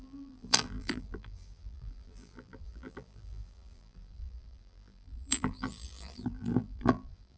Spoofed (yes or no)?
yes